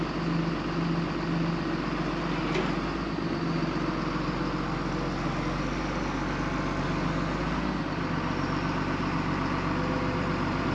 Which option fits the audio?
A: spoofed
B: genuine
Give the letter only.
B